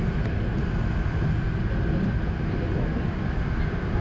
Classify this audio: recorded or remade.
recorded